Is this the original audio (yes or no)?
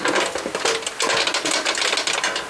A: yes